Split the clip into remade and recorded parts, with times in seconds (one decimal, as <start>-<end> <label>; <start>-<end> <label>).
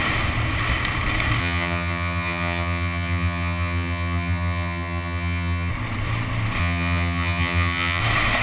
0.0-1.4 recorded; 1.4-5.7 remade; 5.7-6.6 recorded; 6.6-8.0 remade; 8.0-8.4 recorded